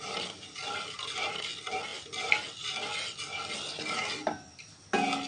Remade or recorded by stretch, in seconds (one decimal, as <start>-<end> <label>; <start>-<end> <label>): 0.0-5.3 recorded